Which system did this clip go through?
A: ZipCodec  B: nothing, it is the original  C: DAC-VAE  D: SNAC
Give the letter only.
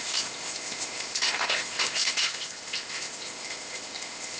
A